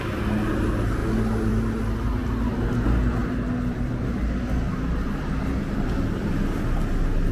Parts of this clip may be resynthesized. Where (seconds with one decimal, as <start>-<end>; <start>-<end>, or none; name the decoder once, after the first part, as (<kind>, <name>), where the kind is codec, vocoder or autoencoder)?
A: none